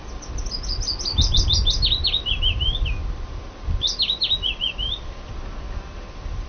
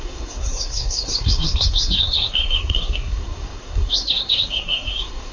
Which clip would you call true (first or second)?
first